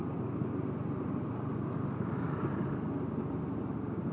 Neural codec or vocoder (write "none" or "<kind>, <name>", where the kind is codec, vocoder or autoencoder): none